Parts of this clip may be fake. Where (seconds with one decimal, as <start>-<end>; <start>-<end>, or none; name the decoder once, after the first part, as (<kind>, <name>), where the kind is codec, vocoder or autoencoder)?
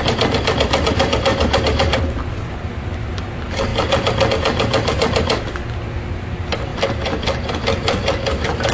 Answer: 1.3-2.0 (vocoder, BigVGAN v2)